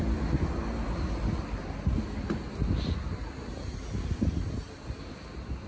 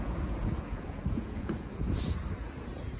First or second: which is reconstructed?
second